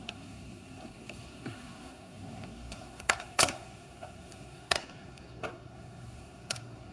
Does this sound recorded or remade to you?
remade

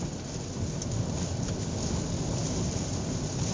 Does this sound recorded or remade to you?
recorded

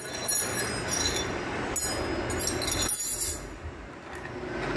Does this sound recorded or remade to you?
recorded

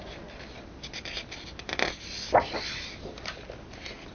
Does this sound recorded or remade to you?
recorded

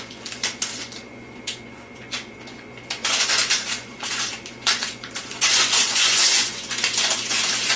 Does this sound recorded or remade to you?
remade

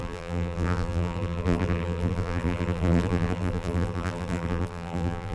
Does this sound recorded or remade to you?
remade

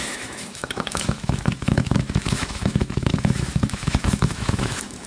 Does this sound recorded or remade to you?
remade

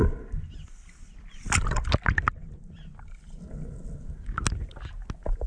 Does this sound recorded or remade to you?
recorded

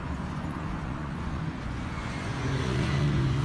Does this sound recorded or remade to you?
remade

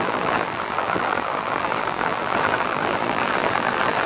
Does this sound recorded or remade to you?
remade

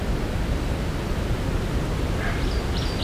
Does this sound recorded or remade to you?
recorded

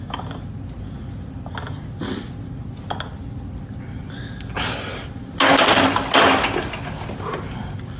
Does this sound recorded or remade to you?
recorded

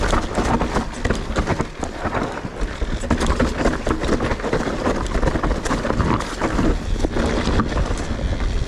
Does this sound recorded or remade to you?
recorded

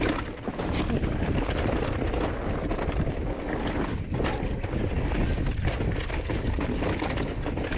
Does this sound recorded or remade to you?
recorded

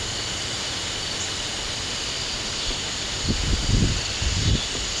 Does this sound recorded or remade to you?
recorded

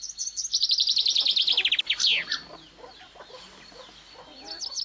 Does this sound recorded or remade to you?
recorded